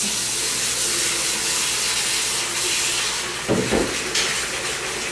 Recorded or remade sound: recorded